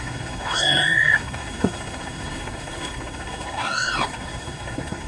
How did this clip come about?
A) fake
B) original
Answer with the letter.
A